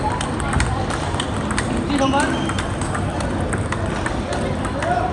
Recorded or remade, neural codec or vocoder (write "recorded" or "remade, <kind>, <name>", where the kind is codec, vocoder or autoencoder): remade, vocoder, BigVGAN v2